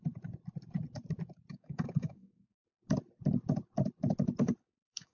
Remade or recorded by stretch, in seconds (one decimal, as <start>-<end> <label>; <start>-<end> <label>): 0.0-1.5 recorded; 1.5-2.7 remade; 2.7-4.6 recorded; 4.6-5.1 remade